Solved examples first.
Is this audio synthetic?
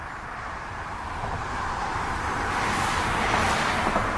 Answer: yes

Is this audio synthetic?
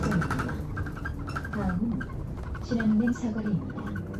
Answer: no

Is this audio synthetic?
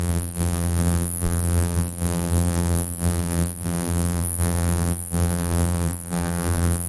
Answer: yes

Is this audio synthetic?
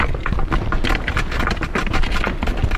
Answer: no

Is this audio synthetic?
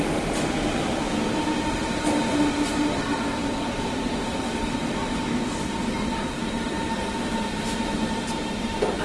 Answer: yes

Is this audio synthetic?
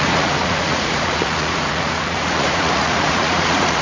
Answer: yes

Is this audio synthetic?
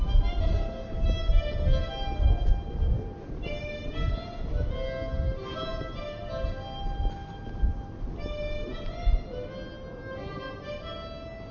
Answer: no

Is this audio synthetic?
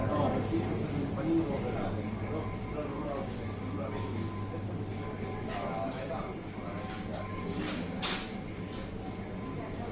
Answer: no